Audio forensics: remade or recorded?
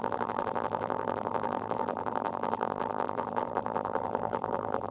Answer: remade